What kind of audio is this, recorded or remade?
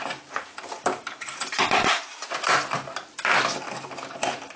recorded